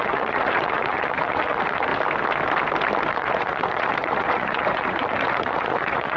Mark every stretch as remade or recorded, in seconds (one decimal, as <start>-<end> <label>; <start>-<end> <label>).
0.0-1.9 remade; 1.9-3.1 recorded; 3.1-6.2 remade